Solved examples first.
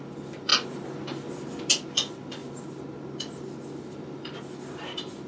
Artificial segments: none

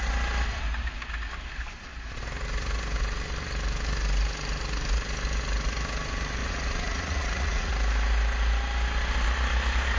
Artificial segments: 6.4-7.7 (vocoder, Vocos)

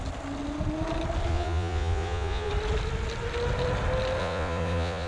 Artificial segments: 1.3-2.5 (vocoder, Vocos); 4.2-5.1

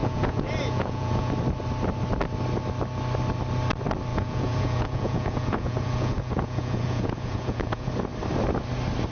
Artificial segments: 0.0-1.3 (vocoder, Vocos); 4.1-7.9

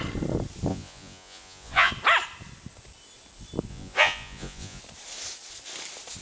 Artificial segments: 0.7-1.9 (vocoder, Vocos); 3.7-4.8

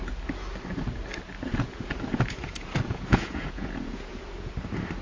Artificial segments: 1.5-4.5 (vocoder, Vocos)

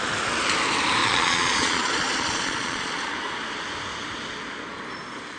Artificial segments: 1.0-3.1 (vocoder, Vocos)

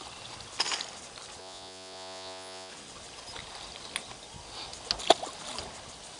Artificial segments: 1.4-2.7 (vocoder, Vocos)